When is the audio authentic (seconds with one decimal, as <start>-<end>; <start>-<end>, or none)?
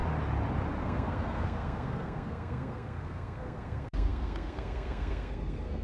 0.0-0.8